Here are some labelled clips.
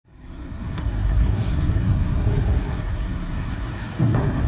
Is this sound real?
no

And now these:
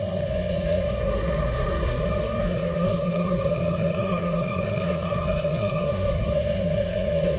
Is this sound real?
no